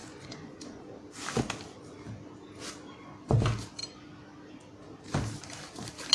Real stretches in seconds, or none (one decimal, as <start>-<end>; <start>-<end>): 0.8-6.1